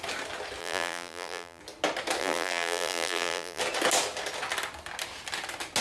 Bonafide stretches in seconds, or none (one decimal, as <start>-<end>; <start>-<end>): 0.0-0.6; 1.6-2.2; 3.6-5.8